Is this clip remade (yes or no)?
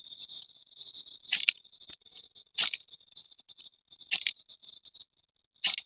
no